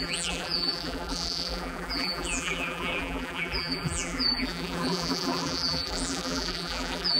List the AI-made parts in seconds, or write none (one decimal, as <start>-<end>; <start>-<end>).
0.0-7.2